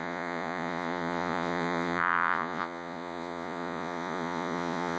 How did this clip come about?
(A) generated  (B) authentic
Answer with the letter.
A